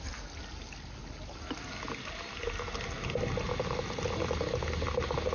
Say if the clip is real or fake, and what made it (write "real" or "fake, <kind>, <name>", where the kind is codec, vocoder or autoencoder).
real